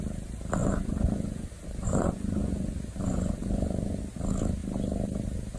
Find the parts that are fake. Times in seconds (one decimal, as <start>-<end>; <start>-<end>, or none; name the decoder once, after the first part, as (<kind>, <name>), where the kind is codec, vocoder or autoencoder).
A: 0.6-4.0 (vocoder, Vocos)